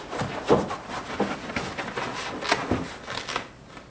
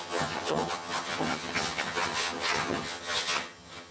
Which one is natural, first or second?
first